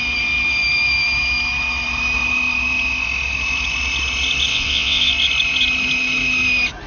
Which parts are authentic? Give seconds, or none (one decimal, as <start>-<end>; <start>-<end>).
0.0-4.5; 5.1-6.9